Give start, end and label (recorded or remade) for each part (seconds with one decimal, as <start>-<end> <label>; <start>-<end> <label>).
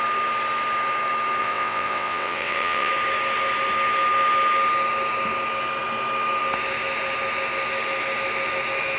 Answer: 0.0-1.4 recorded; 1.4-2.9 remade; 2.9-9.0 recorded